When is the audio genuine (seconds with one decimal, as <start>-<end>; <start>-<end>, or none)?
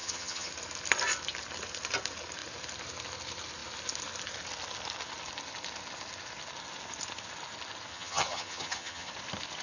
0.5-7.9; 9.1-9.6